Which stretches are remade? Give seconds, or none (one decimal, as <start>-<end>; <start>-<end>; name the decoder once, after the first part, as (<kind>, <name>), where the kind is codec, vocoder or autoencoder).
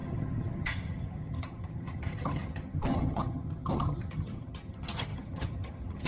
0.0-6.1 (vocoder, HiFi-GAN)